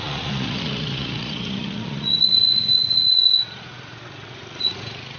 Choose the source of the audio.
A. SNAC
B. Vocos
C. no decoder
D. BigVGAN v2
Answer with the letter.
B